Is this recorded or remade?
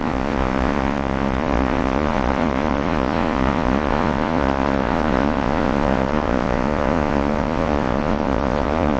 remade